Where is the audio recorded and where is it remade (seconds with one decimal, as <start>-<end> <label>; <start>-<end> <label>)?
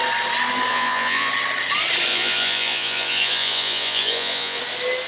0.0-0.7 recorded; 0.7-1.3 remade; 1.3-2.1 recorded; 2.1-4.6 remade; 4.6-5.1 recorded